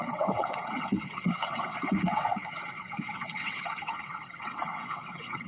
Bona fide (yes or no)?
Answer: no